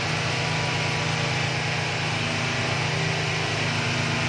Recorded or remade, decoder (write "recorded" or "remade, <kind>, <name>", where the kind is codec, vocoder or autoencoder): recorded